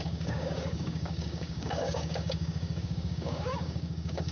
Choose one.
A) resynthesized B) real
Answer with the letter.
A